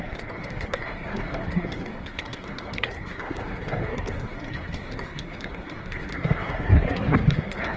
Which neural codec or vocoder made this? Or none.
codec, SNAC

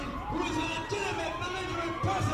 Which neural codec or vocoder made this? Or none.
none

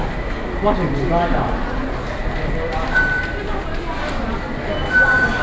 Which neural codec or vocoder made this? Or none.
none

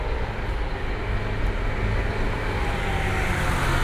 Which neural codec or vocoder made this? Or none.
none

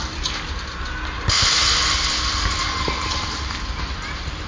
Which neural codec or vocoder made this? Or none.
none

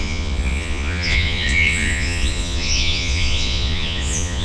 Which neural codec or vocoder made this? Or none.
vocoder, Vocos